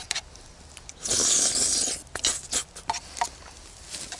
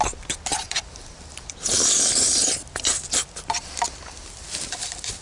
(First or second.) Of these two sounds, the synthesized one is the second